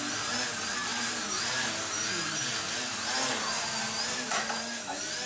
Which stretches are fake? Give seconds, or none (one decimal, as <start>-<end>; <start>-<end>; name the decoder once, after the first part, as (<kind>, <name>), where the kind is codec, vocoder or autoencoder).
none